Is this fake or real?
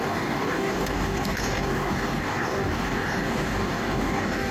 fake